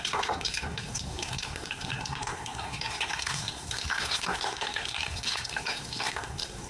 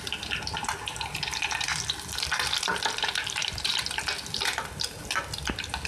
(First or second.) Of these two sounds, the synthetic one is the first